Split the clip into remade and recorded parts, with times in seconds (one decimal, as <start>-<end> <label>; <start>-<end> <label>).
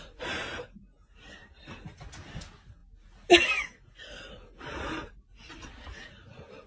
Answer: 0.0-6.7 recorded